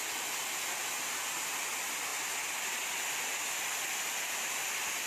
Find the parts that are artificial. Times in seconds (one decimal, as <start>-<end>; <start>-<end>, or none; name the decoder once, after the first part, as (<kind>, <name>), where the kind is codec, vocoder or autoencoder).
none